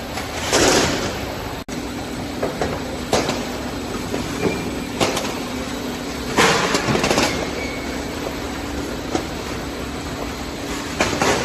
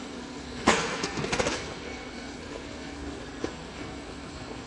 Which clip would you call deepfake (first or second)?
second